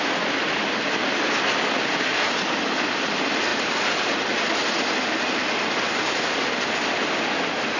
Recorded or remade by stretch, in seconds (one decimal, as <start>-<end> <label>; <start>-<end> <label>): 0.0-7.8 recorded